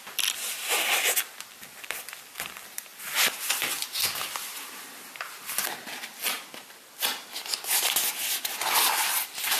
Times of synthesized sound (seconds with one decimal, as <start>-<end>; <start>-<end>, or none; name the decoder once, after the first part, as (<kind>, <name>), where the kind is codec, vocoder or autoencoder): none